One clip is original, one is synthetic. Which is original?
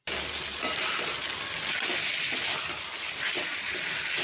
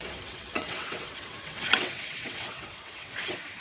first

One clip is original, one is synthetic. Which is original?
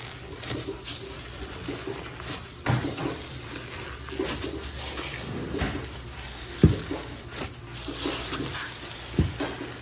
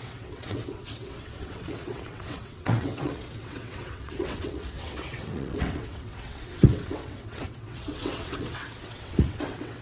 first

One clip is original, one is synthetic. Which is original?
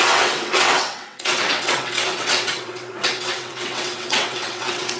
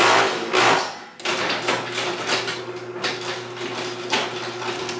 second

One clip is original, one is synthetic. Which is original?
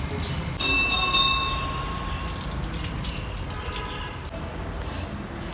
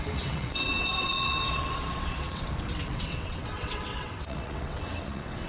first